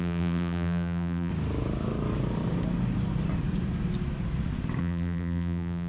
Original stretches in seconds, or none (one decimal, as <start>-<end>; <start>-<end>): 1.3-4.8